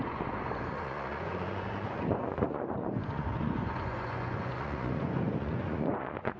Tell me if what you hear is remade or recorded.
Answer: remade